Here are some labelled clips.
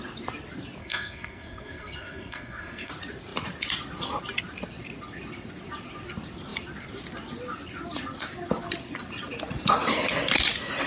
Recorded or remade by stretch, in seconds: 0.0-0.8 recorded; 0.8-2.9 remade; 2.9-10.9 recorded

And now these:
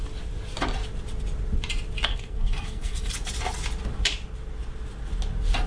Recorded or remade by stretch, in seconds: 0.0-2.1 recorded; 2.1-3.1 remade; 3.1-5.7 recorded

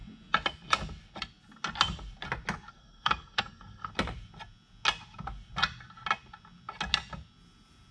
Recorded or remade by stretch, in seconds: 0.0-2.7 recorded; 2.7-3.9 remade; 3.9-7.9 recorded